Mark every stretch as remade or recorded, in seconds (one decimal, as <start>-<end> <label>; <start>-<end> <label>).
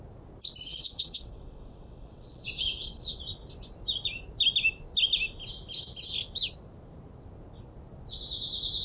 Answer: 0.0-0.7 recorded; 0.7-3.2 remade; 3.2-8.8 recorded